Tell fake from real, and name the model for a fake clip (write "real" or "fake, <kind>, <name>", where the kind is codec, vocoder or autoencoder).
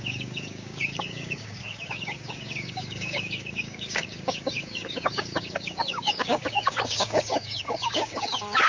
fake, codec, DAC